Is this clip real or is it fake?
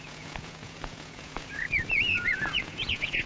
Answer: fake